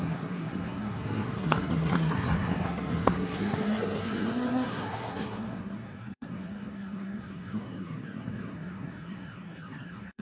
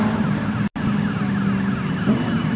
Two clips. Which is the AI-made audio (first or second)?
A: first